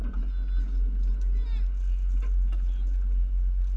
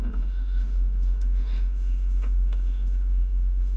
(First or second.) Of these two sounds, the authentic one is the first